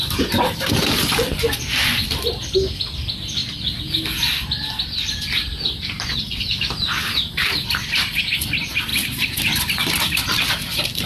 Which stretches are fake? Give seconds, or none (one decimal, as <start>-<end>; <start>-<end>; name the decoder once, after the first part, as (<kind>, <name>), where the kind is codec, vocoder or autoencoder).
0.0-2.0 (vocoder, BigVGAN v2); 2.8-3.4; 5.6-8.9; 10.0-11.1